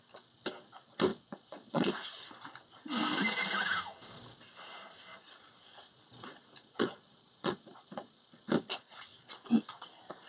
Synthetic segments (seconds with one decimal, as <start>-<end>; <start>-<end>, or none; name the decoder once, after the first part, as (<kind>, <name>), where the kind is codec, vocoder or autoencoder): 1.1-1.9 (vocoder, Vocos); 5.1-8.3

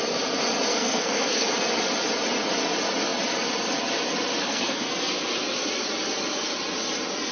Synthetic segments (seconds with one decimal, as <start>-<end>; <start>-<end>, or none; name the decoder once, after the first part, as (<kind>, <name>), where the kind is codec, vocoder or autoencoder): 0.7-1.5 (codec, SNAC); 4.4-4.9